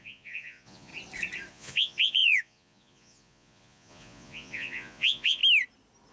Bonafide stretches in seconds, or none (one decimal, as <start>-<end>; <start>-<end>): 0.9-1.5; 5.4-6.1